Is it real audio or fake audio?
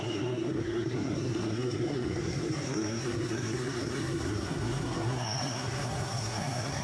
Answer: fake